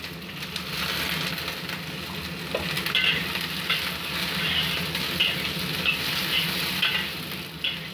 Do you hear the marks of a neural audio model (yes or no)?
no